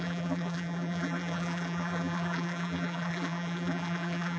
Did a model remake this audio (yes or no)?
yes